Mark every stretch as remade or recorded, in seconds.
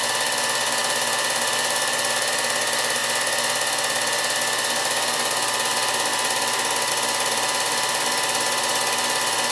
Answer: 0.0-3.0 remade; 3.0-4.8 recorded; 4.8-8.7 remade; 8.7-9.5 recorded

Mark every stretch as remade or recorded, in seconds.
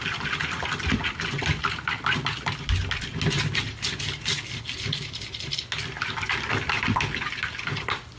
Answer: 0.0-1.5 recorded; 1.5-2.5 remade; 2.5-8.2 recorded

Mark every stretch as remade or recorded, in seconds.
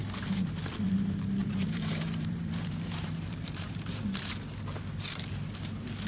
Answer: 0.0-0.6 remade; 0.6-1.4 recorded; 1.4-4.3 remade; 4.3-6.1 recorded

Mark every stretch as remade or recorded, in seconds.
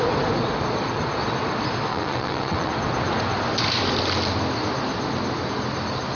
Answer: 0.0-1.9 recorded; 1.9-2.7 remade; 2.7-6.2 recorded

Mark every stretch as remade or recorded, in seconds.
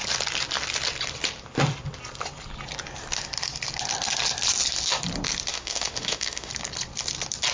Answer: 0.0-5.5 recorded; 5.5-6.5 remade; 6.5-7.5 recorded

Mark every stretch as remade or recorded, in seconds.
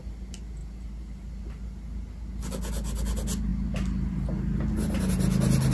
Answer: 0.0-5.7 recorded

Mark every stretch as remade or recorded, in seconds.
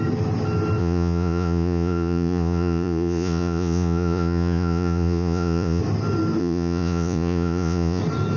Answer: 0.0-0.8 recorded; 0.8-5.8 remade; 5.8-6.4 recorded; 6.4-8.0 remade; 8.0-8.4 recorded